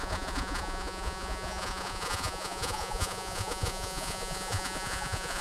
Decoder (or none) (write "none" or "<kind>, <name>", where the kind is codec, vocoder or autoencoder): vocoder, Vocos